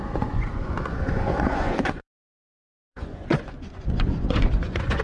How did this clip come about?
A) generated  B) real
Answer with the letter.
A